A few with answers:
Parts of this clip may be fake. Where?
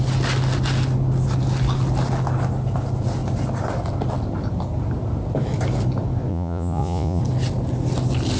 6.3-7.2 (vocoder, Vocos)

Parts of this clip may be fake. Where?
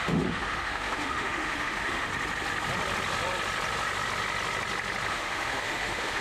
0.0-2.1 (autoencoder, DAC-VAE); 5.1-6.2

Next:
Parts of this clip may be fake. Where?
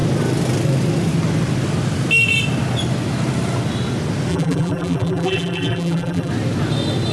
4.3-6.3 (vocoder, BigVGAN v2)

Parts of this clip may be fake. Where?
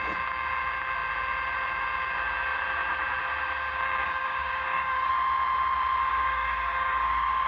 4.0-5.1 (codec, DAC); 6.1-7.5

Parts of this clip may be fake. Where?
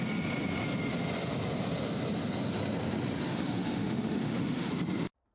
3.3-4.7 (autoencoder, DAC-VAE)